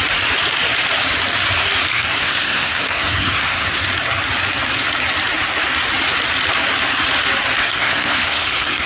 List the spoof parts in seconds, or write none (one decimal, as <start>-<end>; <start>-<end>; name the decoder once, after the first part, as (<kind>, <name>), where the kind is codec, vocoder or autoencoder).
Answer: 1.9-3.8 (codec, SNAC); 7.6-8.9